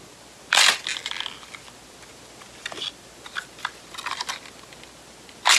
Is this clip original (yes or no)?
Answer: yes